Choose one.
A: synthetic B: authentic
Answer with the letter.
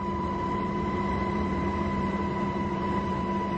A